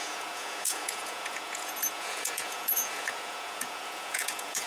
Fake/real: fake